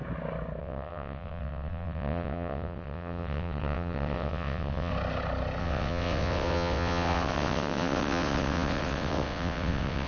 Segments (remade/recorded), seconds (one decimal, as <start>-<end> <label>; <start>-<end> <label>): 0.0-0.6 recorded; 0.6-4.9 remade; 4.9-5.6 recorded; 5.6-10.1 remade